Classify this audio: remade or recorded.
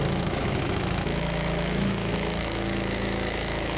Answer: remade